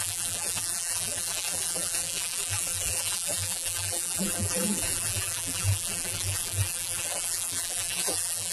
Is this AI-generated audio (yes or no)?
yes